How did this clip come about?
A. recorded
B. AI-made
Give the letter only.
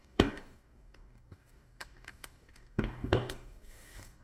B